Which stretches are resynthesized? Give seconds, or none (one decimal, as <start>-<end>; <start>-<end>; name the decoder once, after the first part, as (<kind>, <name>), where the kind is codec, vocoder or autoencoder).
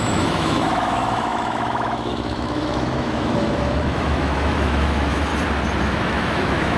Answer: 0.0-5.3 (autoencoder, DAC-VAE); 5.8-6.8